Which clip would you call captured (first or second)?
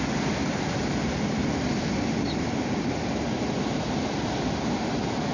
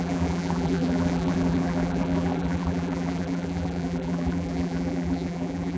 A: first